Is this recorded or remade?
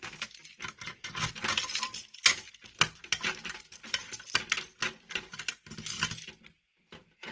recorded